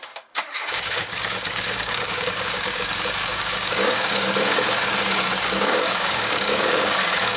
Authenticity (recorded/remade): remade